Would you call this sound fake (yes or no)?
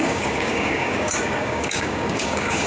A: yes